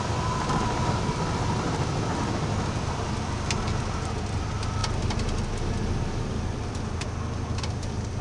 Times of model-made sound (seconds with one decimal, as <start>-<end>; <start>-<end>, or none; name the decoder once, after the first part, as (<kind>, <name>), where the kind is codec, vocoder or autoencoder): none